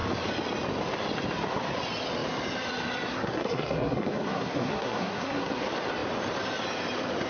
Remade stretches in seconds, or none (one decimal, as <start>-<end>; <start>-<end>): 3.1-5.6